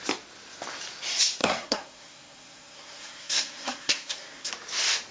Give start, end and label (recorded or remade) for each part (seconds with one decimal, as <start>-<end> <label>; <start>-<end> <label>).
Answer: 0.0-1.4 recorded; 1.4-4.5 remade; 4.5-5.1 recorded